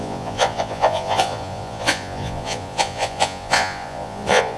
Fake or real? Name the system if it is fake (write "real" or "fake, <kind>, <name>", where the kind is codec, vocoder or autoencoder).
fake, vocoder, Vocos